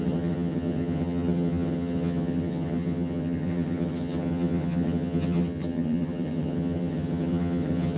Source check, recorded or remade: remade